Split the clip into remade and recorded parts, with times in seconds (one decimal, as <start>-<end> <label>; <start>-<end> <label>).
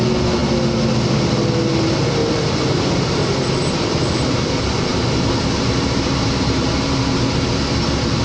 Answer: 0.0-2.2 recorded; 2.2-4.5 remade; 4.5-4.9 recorded; 4.9-7.5 remade; 7.5-8.2 recorded